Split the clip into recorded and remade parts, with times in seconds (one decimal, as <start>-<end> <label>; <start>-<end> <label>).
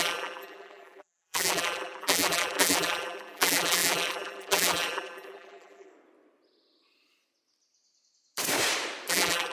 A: 0.0-5.9 remade; 5.9-9.1 recorded; 9.1-9.5 remade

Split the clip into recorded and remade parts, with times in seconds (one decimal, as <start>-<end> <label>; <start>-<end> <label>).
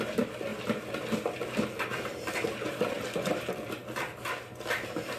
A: 0.0-0.5 remade; 0.5-3.3 recorded; 3.3-5.2 remade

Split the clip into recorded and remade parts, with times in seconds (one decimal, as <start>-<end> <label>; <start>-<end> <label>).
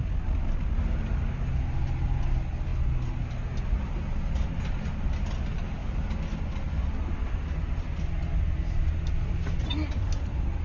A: 0.0-10.6 recorded